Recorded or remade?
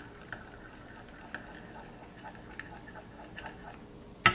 recorded